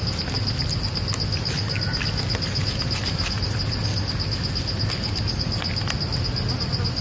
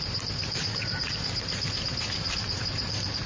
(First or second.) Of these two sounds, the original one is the first